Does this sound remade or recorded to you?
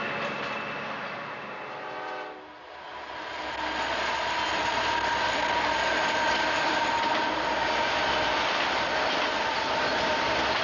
recorded